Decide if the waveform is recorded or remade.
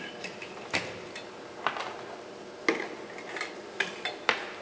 recorded